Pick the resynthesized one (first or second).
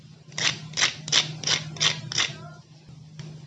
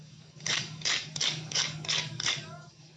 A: second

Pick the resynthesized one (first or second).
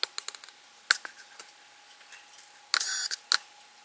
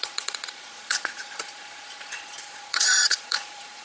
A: second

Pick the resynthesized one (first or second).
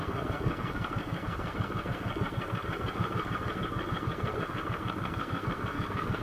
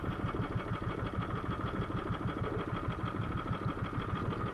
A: first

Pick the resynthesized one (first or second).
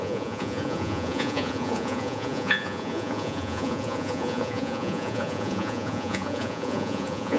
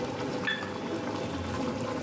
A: first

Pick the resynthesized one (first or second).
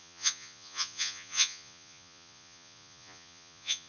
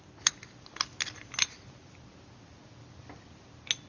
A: first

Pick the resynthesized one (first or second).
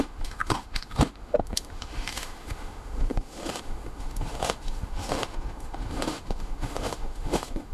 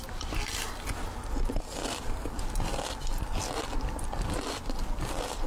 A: first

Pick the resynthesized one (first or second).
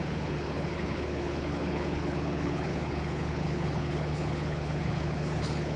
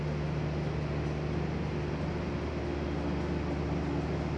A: first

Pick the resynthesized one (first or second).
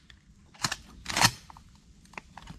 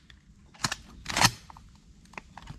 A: first